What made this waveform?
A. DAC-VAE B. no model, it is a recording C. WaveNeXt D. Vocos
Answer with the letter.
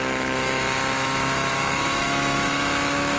A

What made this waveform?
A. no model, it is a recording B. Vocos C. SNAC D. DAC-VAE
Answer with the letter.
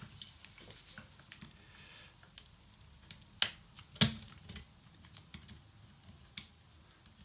A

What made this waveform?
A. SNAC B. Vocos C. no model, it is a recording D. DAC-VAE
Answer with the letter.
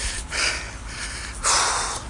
C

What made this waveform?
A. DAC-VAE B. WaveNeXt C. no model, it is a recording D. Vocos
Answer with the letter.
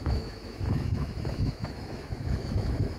A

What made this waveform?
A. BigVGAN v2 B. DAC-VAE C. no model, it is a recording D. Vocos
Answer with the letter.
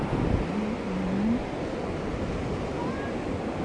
C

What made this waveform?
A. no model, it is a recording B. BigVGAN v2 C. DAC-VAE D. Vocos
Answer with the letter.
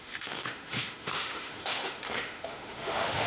C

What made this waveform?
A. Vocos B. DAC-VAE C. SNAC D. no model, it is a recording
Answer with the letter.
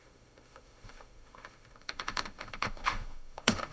B